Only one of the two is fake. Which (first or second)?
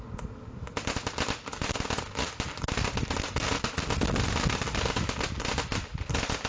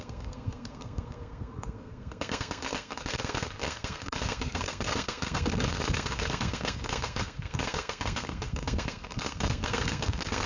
second